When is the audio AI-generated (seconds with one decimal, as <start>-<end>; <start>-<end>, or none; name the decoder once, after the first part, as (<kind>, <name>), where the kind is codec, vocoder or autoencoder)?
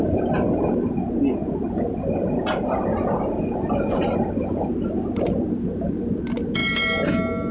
none